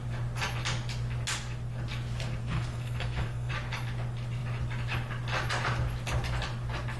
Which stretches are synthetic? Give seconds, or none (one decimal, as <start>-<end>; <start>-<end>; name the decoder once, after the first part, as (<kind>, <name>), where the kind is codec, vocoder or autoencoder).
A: 2.4-3.5 (codec, SNAC)